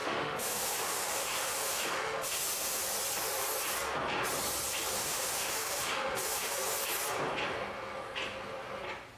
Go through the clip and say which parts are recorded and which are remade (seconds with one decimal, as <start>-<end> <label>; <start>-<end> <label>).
0.0-2.8 remade; 2.8-5.0 recorded; 5.0-6.6 remade; 6.6-9.2 recorded